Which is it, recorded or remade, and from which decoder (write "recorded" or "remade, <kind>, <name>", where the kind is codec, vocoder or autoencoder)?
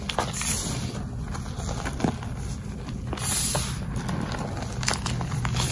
recorded